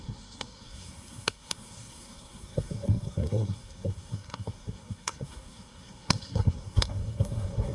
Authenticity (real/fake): fake